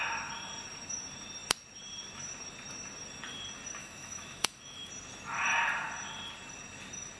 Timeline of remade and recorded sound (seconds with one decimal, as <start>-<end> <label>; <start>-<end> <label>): 0.0-3.8 recorded; 3.8-4.9 remade; 4.9-7.2 recorded